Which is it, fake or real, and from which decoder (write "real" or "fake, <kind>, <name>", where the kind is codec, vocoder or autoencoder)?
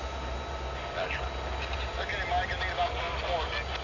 real